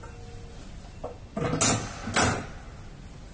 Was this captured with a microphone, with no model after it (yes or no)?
yes